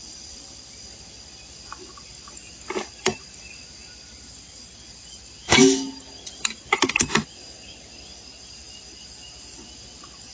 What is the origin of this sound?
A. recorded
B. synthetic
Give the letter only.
B